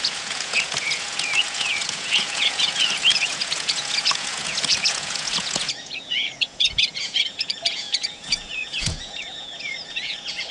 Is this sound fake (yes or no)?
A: yes